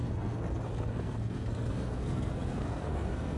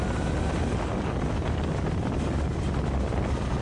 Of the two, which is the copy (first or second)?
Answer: first